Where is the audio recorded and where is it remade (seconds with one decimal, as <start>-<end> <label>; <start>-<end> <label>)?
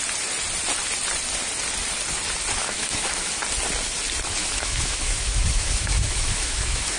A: 0.0-2.6 recorded; 2.6-3.3 remade; 3.3-4.4 recorded; 4.4-7.0 remade